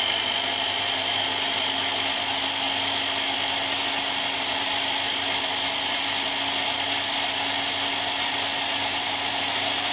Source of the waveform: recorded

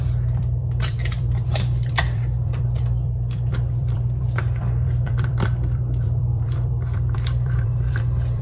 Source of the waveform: remade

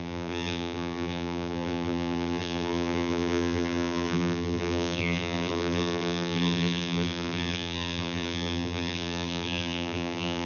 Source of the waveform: remade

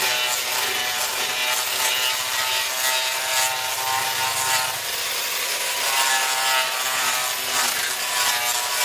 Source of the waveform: recorded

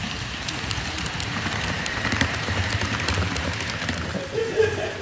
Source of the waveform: remade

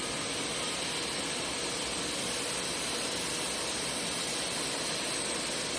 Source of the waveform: recorded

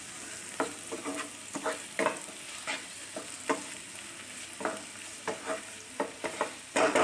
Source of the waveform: remade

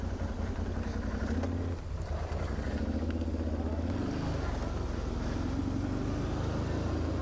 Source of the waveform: recorded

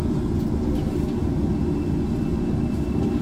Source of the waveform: recorded